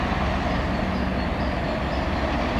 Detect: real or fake real